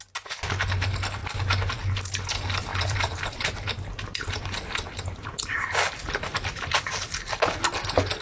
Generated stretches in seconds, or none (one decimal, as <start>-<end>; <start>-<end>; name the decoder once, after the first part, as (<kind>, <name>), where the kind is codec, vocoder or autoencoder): 2.7-6.9 (vocoder, BigVGAN v2)